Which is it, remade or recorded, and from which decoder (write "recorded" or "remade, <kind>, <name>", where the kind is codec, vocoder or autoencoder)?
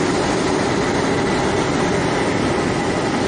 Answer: recorded